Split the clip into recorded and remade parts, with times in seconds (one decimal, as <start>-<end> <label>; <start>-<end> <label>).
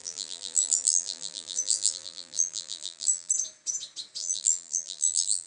0.0-3.3 remade; 3.3-4.2 recorded; 4.2-5.5 remade